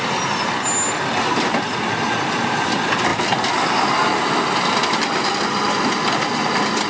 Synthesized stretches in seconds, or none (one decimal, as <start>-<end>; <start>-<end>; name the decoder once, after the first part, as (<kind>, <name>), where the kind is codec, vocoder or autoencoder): none